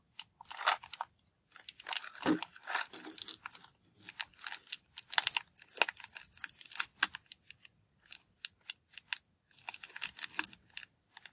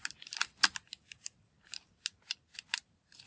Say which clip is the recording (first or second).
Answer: first